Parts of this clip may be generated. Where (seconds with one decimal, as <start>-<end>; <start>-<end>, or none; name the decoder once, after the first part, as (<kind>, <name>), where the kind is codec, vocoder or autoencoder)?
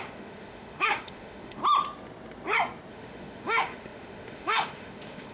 0.0-1.6 (autoencoder, DAC-VAE); 2.9-5.3